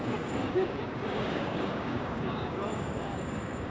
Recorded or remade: remade